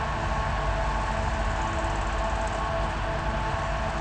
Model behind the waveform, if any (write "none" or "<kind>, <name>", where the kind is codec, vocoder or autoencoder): none